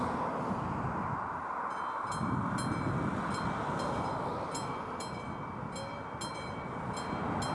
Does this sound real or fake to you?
real